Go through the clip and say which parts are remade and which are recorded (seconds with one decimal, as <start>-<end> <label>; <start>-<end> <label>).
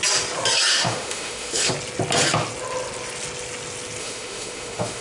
0.0-0.7 recorded; 0.7-1.7 remade; 1.7-4.0 recorded; 4.0-5.0 remade